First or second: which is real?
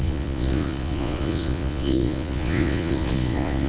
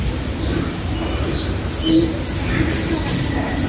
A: second